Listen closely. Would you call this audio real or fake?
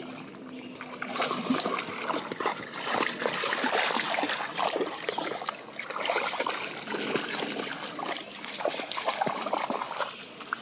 real